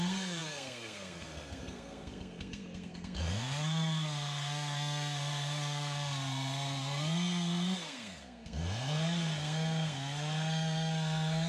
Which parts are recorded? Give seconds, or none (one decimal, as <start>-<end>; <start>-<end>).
none